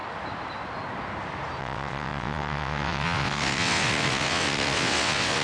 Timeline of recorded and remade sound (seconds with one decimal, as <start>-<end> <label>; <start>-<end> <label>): 0.0-1.6 recorded; 1.6-5.4 remade